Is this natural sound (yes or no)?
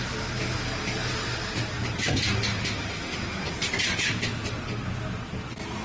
yes